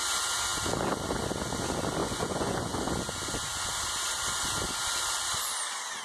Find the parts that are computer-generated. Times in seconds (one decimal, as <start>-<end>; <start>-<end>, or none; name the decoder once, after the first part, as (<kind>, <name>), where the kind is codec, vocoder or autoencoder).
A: 2.0-2.9 (vocoder, Vocos)